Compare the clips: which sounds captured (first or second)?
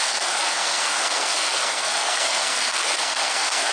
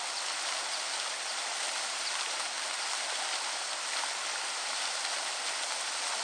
second